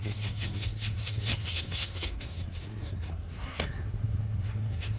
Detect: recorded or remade remade